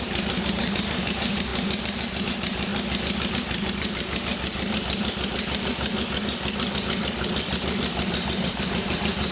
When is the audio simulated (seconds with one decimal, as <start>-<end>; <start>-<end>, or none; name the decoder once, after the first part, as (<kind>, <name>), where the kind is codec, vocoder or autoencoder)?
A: 0.0-2.7 (vocoder, BigVGAN v2); 3.3-5.9; 8.5-9.3